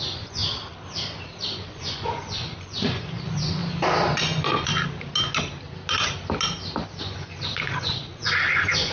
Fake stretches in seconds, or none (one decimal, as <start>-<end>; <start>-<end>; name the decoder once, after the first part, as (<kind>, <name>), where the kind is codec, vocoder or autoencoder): 0.0-0.4 (vocoder, Vocos); 1.4-3.6; 4.2-4.7; 7.0-8.9